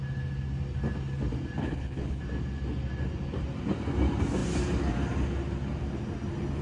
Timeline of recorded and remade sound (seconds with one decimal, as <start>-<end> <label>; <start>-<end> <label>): 0.0-1.6 recorded; 1.6-2.2 remade; 2.2-6.6 recorded